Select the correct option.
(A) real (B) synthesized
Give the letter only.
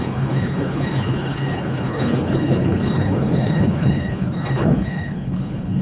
B